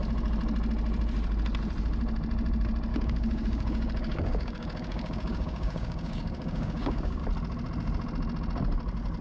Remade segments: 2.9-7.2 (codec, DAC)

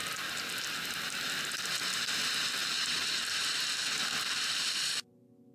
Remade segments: none

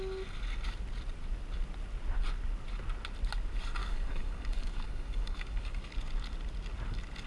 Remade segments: 3.8-5.8 (codec, DAC)

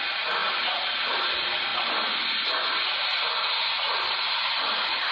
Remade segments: none

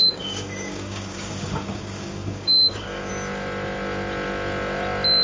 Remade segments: 0.0-3.1 (codec, DAC)

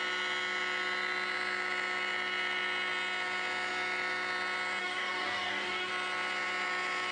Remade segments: 4.8-5.9 (codec, DAC)

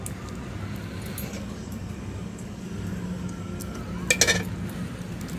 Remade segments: 1.3-3.8 (codec, DAC)